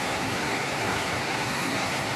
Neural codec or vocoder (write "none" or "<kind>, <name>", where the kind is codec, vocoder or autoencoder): codec, SNAC